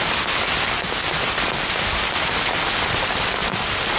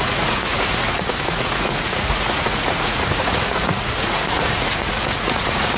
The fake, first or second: second